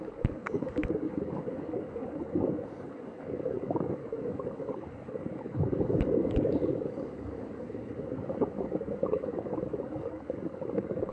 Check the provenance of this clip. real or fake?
fake